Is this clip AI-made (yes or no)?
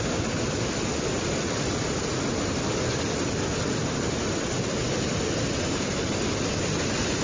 yes